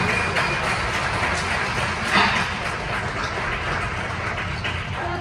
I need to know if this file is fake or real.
real